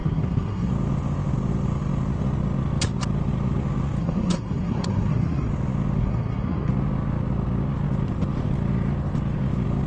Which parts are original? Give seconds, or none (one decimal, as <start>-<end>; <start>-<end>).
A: 0.7-4.0; 5.5-6.0; 6.7-9.9